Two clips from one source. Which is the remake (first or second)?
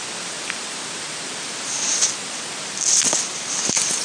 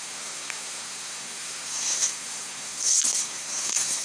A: second